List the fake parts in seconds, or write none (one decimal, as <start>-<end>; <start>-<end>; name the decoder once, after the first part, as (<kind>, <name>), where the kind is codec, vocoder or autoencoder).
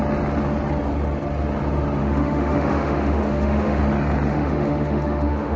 2.0-3.8 (autoencoder, DAC-VAE); 4.3-5.6